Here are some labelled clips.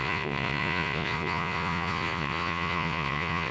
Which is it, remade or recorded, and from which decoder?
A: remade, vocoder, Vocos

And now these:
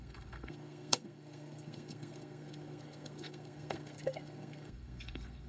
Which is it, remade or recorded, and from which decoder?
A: remade, codec, SNAC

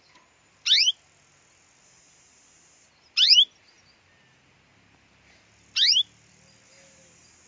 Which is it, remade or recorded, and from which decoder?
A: recorded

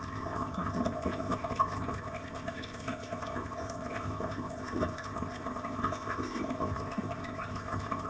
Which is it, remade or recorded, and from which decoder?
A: remade, codec, ZipCodec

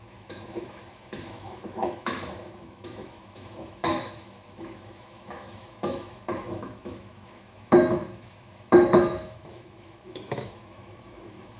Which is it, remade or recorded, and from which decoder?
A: remade, autoencoder, DAC-VAE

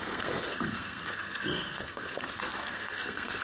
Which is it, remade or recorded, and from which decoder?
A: remade, codec, SNAC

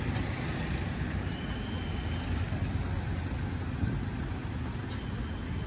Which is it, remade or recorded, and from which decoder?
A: recorded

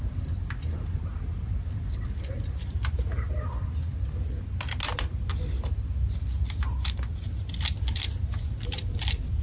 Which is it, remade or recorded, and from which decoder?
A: recorded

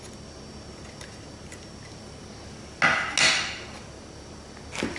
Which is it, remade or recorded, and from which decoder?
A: recorded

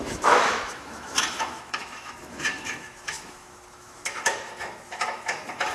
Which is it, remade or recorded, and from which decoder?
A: remade, autoencoder, DAC-VAE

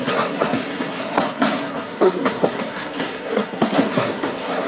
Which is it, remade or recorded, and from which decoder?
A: remade, codec, SNAC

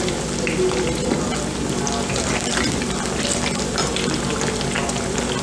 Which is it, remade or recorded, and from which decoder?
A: recorded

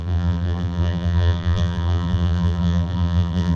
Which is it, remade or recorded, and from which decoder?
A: remade, vocoder, BigVGAN v2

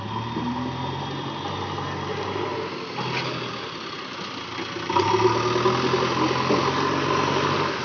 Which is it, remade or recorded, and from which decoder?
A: recorded